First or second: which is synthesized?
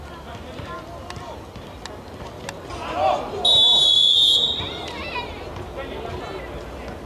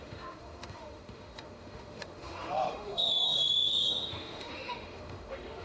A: second